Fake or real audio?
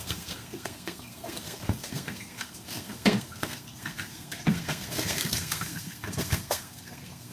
fake